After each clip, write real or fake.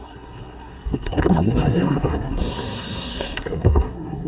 fake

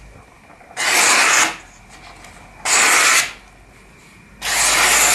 real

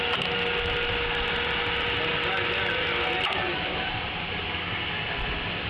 real